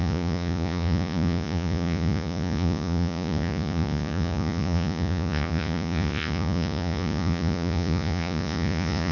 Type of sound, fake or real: fake